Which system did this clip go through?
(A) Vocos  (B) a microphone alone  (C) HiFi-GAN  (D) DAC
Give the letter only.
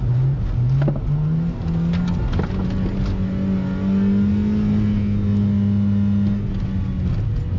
B